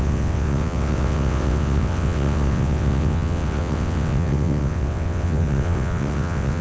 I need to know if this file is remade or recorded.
remade